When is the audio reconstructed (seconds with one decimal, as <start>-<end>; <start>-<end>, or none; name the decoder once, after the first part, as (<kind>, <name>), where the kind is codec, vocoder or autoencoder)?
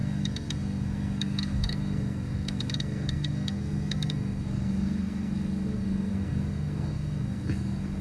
0.0-8.0 (codec, SNAC)